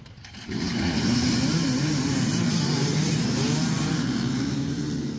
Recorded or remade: remade